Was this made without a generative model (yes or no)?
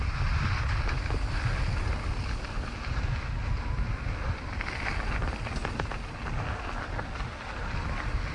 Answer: yes